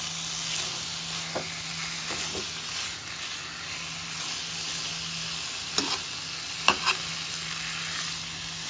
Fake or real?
real